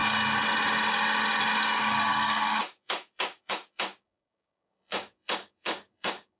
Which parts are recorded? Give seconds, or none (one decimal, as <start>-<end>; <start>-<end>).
0.0-2.1